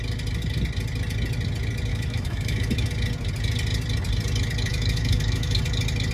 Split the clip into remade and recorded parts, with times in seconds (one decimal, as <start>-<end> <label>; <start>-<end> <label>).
0.0-1.9 recorded; 1.9-2.9 remade; 2.9-4.7 recorded; 4.7-5.6 remade; 5.6-6.1 recorded

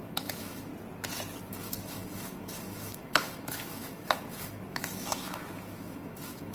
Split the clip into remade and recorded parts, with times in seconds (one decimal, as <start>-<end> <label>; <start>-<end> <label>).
0.0-0.7 remade; 0.7-1.5 recorded; 1.5-6.5 remade